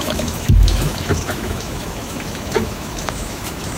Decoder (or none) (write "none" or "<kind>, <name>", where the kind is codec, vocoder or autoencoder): autoencoder, DAC-VAE